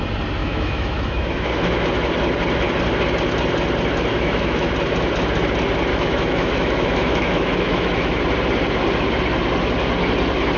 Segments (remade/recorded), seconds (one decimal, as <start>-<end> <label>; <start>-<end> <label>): 0.0-0.4 recorded; 0.4-2.1 remade; 2.1-4.1 recorded; 4.1-4.7 remade; 4.7-5.9 recorded; 5.9-8.2 remade; 8.2-10.6 recorded